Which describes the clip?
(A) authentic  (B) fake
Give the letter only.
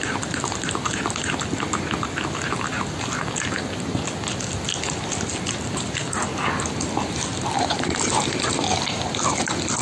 A